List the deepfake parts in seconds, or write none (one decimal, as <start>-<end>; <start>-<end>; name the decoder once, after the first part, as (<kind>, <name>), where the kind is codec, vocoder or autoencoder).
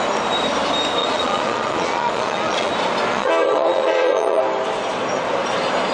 1.0-2.7 (vocoder, Vocos); 3.1-4.4